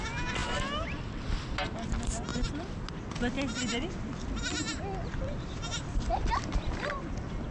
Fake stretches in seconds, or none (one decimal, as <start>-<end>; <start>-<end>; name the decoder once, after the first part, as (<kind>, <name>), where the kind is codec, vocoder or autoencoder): none